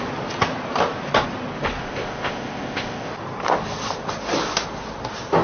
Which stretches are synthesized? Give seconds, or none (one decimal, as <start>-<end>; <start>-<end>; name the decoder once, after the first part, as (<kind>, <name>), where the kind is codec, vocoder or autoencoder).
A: 1.8-3.1 (codec, ZipCodec)